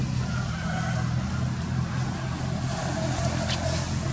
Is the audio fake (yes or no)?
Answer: no